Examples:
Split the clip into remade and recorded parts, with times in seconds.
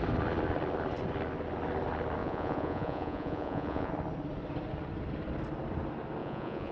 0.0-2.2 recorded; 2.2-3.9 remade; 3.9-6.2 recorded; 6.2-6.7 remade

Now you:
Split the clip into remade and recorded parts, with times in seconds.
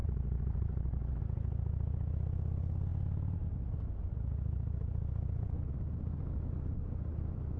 0.0-1.2 remade; 1.2-7.6 recorded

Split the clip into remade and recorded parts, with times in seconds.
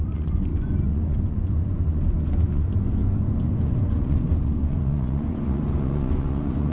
0.0-6.7 remade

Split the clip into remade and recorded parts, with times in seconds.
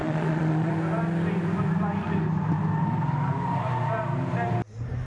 0.0-0.7 remade; 0.7-5.1 recorded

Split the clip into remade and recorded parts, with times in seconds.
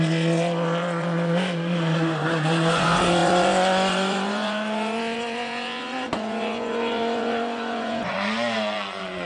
0.0-9.3 remade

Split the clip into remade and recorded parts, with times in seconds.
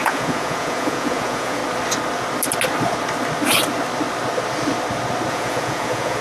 0.0-1.6 remade; 1.6-5.3 recorded; 5.3-6.2 remade